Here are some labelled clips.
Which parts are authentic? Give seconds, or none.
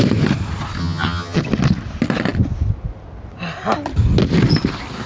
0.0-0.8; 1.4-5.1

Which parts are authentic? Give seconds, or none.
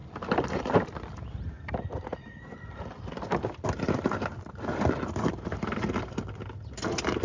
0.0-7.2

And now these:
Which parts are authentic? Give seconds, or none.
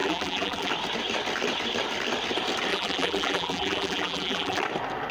0.7-2.7; 4.6-5.1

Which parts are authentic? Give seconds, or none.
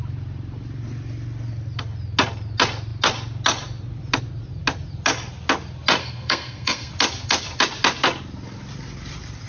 0.0-6.0; 6.9-9.5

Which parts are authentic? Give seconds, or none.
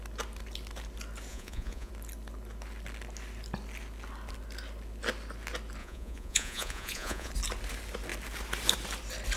0.0-1.3; 1.9-5.8; 7.3-9.4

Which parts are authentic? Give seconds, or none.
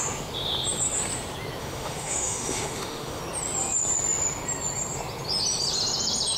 0.0-1.6; 3.2-6.4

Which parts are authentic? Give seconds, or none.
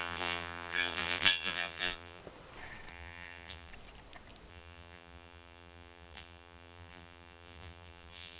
2.2-2.9; 3.7-4.5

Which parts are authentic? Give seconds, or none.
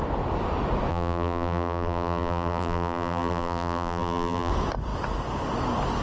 0.0-0.9; 4.5-6.0